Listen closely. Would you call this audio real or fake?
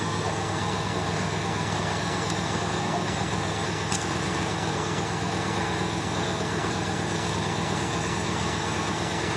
fake